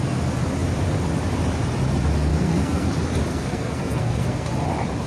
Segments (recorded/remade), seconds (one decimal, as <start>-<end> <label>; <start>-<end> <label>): 0.0-2.3 recorded; 2.3-2.9 remade; 2.9-3.3 recorded; 3.3-4.5 remade; 4.5-5.1 recorded

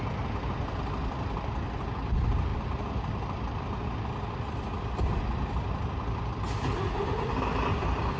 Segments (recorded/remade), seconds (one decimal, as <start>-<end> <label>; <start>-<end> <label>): 0.0-8.2 recorded